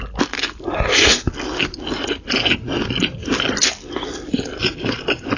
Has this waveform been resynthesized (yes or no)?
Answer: no